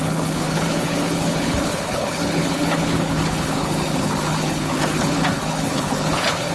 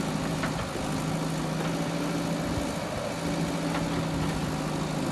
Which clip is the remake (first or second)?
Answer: first